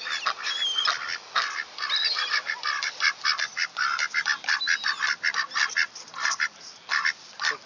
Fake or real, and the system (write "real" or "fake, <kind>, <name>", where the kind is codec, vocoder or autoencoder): real